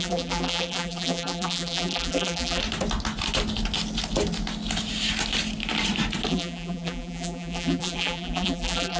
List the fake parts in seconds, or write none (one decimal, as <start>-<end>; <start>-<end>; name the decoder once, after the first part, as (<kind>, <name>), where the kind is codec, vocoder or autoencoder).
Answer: 0.0-2.6 (vocoder, BigVGAN v2); 6.3-9.0